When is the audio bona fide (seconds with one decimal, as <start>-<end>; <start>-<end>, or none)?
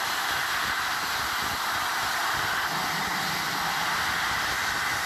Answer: 0.0-5.1